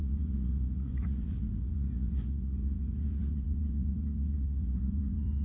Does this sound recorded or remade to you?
remade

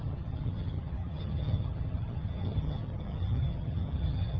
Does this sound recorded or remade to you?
remade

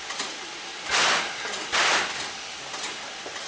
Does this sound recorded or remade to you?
recorded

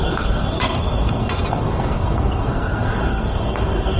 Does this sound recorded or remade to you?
remade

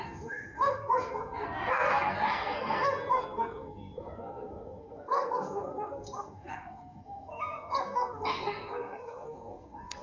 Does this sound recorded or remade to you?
remade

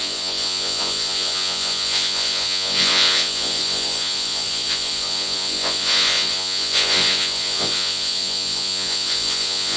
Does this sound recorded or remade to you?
remade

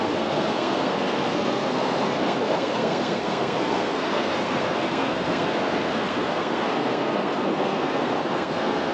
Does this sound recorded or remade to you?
remade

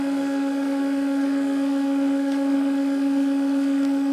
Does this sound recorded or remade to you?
remade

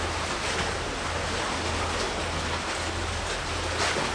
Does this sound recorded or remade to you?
recorded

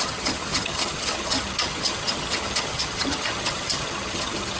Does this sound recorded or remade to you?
remade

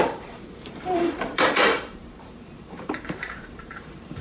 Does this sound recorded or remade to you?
remade